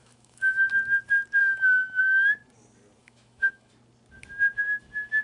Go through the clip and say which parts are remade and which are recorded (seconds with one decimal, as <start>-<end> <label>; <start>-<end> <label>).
0.0-0.7 remade; 0.7-1.4 recorded; 1.4-2.0 remade; 2.0-3.0 recorded; 3.0-3.7 remade; 3.7-5.2 recorded